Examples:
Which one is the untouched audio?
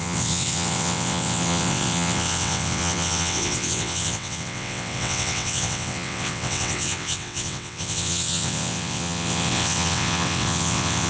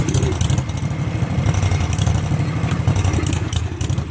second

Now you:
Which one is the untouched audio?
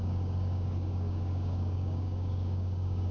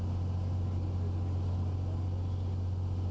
second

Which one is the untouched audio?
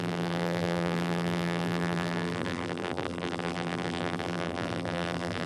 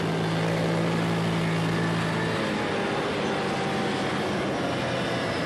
second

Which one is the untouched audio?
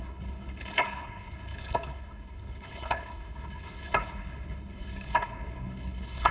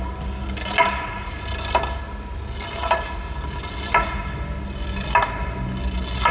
second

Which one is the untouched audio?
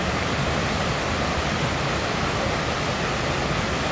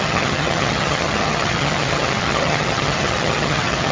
first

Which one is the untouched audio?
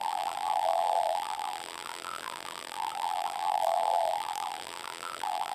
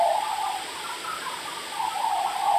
second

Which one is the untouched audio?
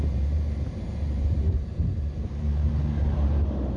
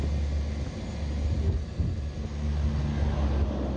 second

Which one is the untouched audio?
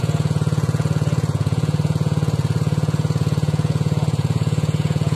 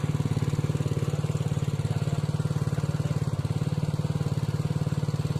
second